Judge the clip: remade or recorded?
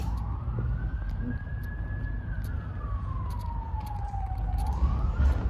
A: recorded